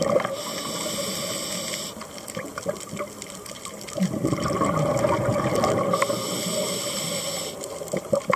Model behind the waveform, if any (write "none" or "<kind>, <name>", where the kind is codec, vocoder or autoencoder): none